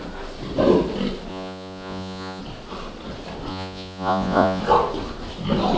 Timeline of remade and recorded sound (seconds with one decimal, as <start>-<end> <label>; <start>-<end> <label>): 0.0-1.3 recorded; 1.3-2.4 remade; 2.4-3.5 recorded; 3.5-4.6 remade; 4.6-5.8 recorded